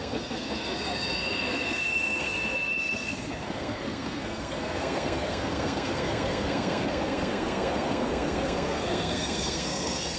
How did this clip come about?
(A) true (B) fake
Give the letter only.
B